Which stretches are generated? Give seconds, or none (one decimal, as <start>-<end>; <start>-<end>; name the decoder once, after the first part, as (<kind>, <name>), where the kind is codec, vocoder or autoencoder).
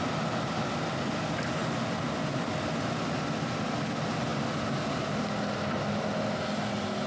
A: none